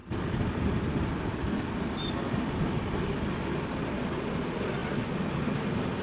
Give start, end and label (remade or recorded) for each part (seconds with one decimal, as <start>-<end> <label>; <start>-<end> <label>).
0.0-6.0 recorded